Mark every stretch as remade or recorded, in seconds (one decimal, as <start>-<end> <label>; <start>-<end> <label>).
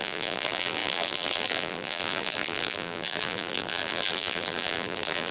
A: 0.0-5.3 remade